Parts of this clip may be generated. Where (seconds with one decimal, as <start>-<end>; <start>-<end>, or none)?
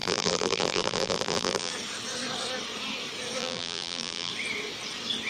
0.0-1.7; 3.4-4.3